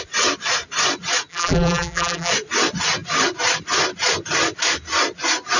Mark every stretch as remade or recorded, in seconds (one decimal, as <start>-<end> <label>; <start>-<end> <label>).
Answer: 0.0-1.3 recorded; 1.3-2.3 remade; 2.3-5.6 recorded